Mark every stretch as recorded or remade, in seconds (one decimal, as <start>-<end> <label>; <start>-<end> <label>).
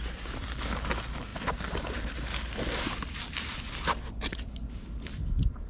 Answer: 0.0-5.7 recorded